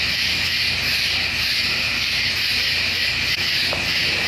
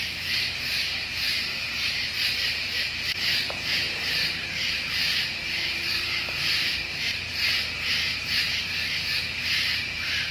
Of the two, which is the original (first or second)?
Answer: first